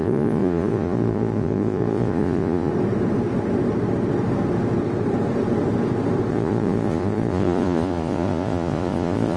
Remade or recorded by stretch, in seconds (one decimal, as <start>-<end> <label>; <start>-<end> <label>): 0.0-2.7 remade; 2.7-6.3 recorded; 6.3-9.4 remade

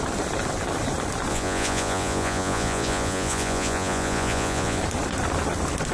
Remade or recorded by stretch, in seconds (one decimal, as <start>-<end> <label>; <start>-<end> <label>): 0.0-1.3 recorded; 1.3-4.8 remade; 4.8-5.9 recorded

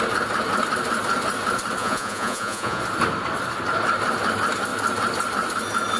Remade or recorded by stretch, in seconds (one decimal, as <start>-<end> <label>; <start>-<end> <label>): 0.0-1.8 recorded; 1.8-2.8 remade; 2.8-6.0 recorded